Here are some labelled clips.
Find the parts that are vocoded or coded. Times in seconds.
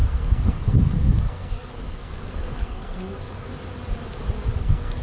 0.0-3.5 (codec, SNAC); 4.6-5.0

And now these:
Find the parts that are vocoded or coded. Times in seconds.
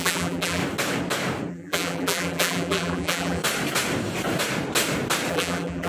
0.0-0.6 (vocoder, BigVGAN v2); 1.5-3.4; 5.3-5.9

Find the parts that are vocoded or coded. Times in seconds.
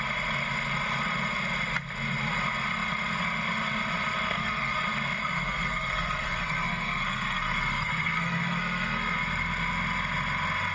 4.2-4.8 (codec, SNAC); 5.2-9.2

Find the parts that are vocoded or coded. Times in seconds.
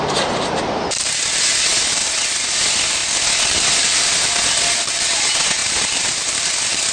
5.6-6.5 (vocoder, BigVGAN v2)